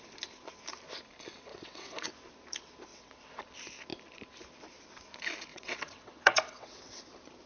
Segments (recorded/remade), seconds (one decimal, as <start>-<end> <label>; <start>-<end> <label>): 0.0-1.5 recorded; 1.5-2.1 remade; 2.1-2.9 recorded; 2.9-3.4 remade; 3.4-5.5 recorded; 5.5-7.0 remade; 7.0-7.5 recorded